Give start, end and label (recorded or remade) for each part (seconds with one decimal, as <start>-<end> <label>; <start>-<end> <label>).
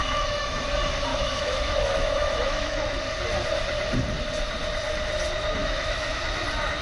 0.0-0.6 remade; 0.6-1.1 recorded; 1.1-3.0 remade; 3.0-5.6 recorded; 5.6-6.2 remade; 6.2-6.8 recorded